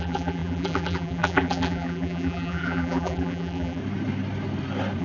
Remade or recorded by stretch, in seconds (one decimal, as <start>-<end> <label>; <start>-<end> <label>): 0.0-3.8 remade; 3.8-5.0 recorded